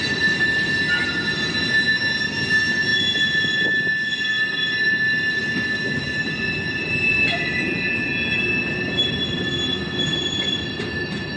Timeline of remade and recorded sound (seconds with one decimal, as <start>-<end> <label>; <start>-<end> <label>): 0.0-11.4 recorded